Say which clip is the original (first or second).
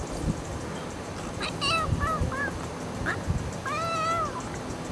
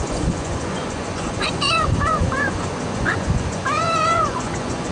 first